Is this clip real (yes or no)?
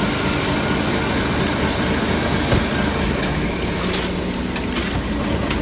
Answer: yes